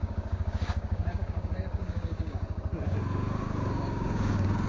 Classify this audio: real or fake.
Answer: fake